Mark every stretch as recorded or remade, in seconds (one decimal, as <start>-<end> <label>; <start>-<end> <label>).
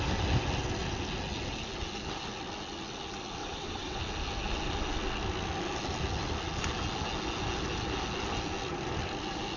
0.0-3.4 recorded; 3.4-4.0 remade; 4.0-9.6 recorded